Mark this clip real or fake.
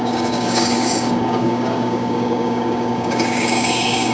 fake